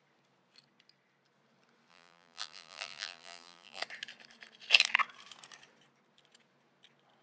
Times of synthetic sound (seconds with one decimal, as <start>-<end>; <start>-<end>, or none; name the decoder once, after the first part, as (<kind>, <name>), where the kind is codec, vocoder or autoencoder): 1.9-3.8 (vocoder, BigVGAN v2)